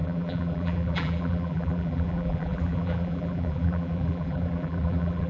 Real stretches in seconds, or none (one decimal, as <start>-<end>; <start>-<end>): none